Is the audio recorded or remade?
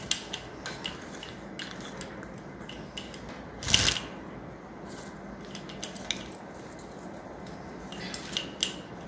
recorded